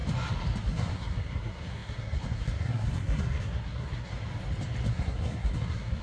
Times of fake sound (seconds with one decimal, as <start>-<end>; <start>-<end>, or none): 0.6-4.1; 4.9-6.0

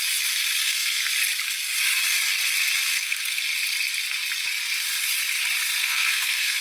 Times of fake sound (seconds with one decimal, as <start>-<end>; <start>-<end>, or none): 0.6-1.1; 2.9-3.4; 5.8-6.6